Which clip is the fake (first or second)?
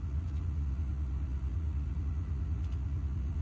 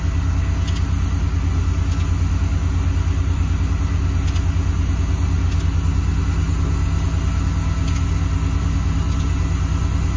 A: first